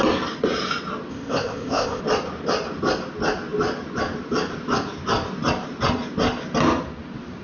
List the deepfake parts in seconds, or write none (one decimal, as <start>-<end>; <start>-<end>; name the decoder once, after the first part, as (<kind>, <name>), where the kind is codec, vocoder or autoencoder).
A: 1.1-2.0 (codec, ZipCodec)